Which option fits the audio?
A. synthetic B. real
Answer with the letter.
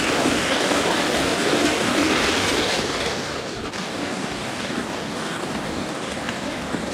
A